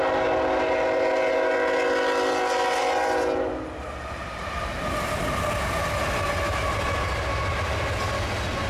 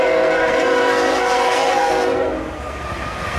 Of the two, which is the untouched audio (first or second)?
first